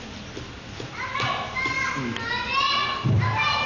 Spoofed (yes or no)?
no